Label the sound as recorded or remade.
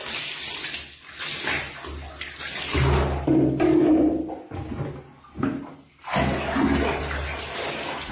recorded